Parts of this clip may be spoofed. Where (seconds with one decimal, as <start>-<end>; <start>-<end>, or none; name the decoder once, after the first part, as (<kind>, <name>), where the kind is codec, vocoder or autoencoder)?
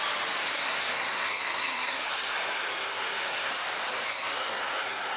0.4-3.5 (codec, SNAC); 4.1-5.2